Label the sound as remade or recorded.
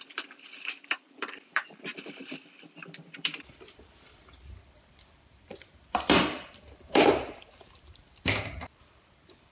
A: remade